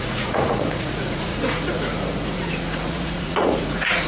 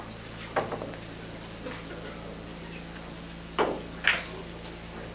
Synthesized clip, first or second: first